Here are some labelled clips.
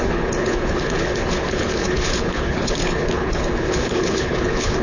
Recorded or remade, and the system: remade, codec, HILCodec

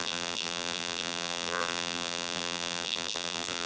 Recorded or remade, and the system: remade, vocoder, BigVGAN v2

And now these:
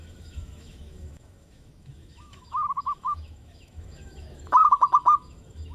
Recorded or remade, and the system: remade, autoencoder, DAC-VAE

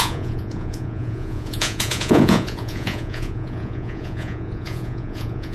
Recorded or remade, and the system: remade, vocoder, Vocos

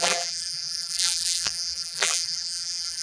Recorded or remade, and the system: remade, vocoder, BigVGAN v2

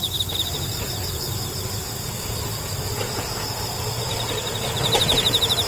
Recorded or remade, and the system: remade, vocoder, BigVGAN v2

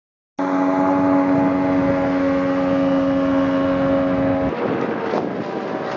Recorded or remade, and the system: recorded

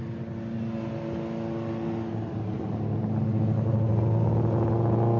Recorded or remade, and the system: recorded